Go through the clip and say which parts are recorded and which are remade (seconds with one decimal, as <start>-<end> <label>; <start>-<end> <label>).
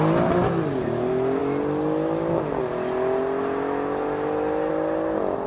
0.0-5.5 recorded